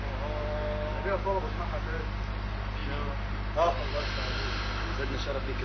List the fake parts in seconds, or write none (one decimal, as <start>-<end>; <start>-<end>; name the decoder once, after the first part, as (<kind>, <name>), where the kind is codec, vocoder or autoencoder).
none